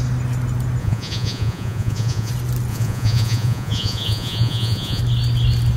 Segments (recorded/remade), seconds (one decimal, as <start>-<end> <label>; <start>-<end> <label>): 0.0-0.8 recorded; 0.8-2.3 remade; 2.3-2.7 recorded; 2.7-5.0 remade; 5.0-5.8 recorded